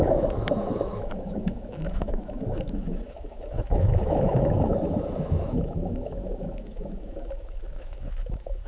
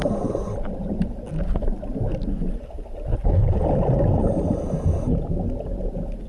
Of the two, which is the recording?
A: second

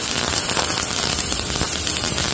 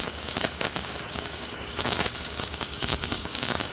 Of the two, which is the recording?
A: first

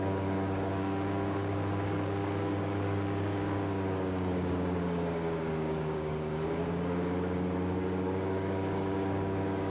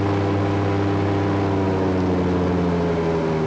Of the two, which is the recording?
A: second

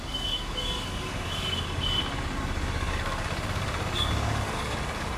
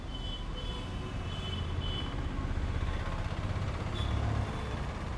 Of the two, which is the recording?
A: second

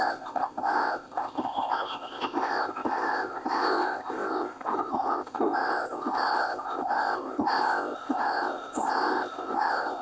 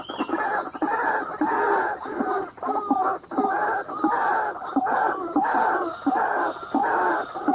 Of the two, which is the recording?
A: second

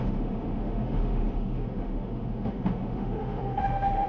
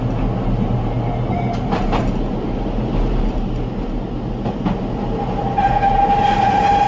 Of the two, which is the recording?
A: second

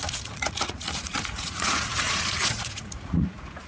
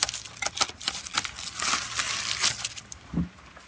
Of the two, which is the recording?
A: second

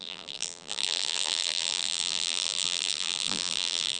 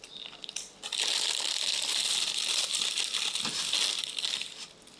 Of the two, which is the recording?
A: second